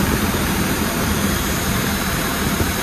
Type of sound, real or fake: fake